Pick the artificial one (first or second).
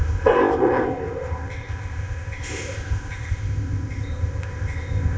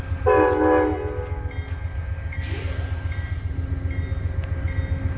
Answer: first